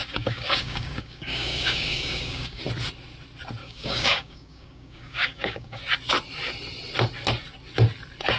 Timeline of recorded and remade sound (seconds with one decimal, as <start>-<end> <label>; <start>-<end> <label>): 0.0-2.6 remade; 2.6-3.6 recorded; 3.6-5.8 remade; 5.8-8.4 recorded